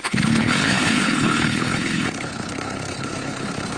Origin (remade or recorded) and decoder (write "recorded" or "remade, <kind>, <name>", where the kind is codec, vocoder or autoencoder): remade, codec, HILCodec